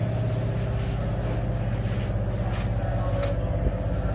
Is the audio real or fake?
real